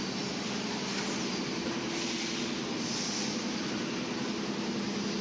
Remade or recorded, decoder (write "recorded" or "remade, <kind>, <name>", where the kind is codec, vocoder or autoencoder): recorded